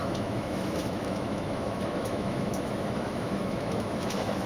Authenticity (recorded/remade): remade